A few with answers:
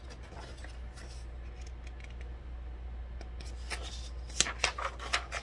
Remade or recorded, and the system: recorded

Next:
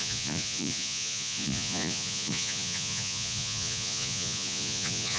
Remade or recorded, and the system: remade, vocoder, Vocos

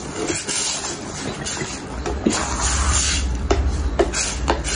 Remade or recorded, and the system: recorded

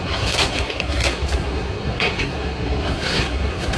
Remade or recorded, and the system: remade, codec, SNAC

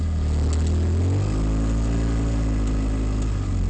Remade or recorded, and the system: recorded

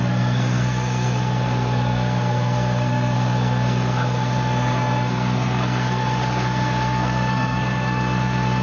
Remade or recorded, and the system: remade, codec, SNAC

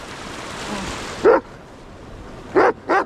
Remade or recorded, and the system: recorded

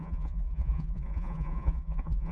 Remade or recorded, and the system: remade, vocoder, Vocos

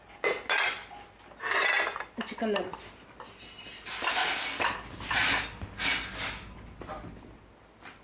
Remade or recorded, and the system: recorded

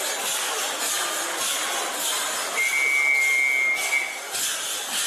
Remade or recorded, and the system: recorded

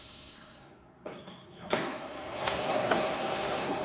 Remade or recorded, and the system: remade, codec, SNAC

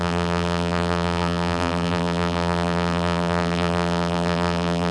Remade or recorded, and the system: remade, vocoder, BigVGAN v2